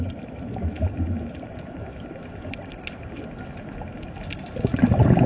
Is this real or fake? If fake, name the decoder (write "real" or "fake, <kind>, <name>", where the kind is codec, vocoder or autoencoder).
real